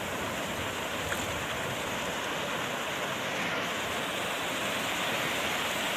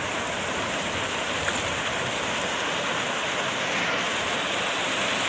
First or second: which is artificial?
second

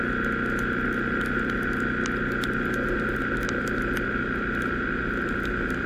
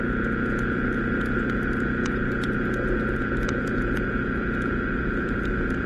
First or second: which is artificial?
second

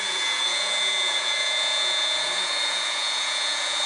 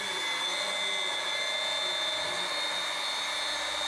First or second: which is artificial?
first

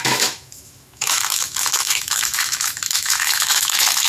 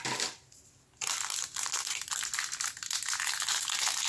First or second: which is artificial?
first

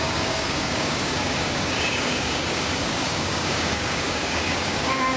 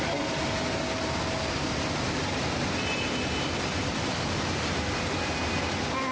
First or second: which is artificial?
first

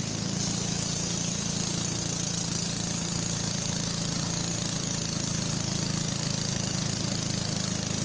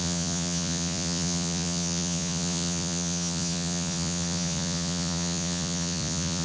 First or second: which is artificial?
second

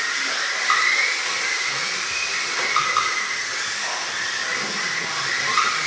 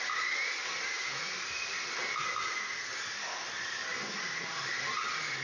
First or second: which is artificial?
first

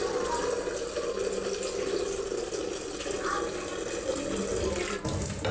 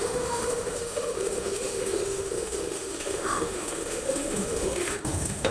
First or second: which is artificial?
second